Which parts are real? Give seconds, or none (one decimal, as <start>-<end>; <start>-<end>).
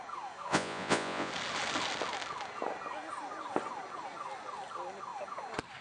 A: 0.0-0.5; 1.3-5.8